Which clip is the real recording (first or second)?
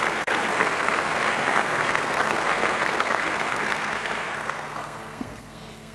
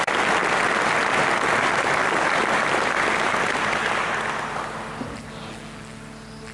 second